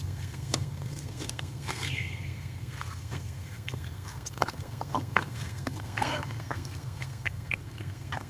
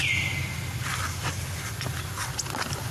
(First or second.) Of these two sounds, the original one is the second